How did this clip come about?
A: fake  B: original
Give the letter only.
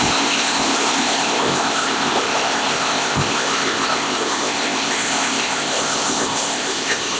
A